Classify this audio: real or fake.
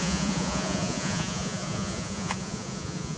fake